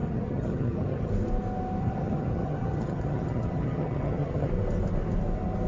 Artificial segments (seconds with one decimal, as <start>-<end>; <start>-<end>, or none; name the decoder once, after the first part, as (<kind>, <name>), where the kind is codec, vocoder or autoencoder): 0.0-1.1 (vocoder, HiFi-GAN); 1.8-4.5

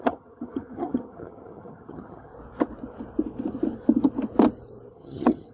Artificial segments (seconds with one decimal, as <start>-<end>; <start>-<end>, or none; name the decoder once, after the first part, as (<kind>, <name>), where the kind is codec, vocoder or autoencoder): 0.0-2.3 (vocoder, HiFi-GAN); 4.9-5.5

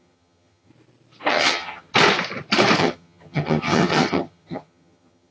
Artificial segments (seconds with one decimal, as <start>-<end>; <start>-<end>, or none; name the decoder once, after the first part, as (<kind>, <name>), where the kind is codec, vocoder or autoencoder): 0.0-0.7 (vocoder, HiFi-GAN); 1.3-1.9; 2.8-5.3

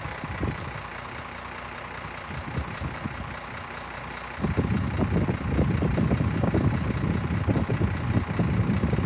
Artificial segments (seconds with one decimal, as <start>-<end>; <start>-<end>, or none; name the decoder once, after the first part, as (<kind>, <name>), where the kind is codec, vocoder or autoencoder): none

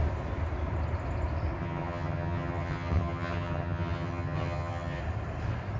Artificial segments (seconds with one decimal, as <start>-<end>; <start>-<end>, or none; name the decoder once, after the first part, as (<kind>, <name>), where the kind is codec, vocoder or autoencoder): 1.6-5.0 (vocoder, HiFi-GAN)

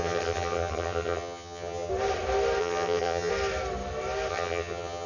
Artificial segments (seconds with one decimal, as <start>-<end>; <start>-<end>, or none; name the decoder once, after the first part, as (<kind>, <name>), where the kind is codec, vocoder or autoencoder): 0.0-1.9 (vocoder, HiFi-GAN); 2.6-3.3; 4.3-5.1